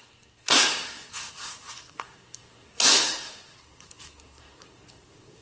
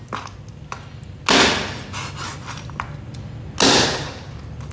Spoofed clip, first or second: first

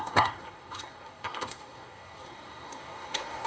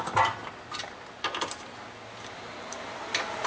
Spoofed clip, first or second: first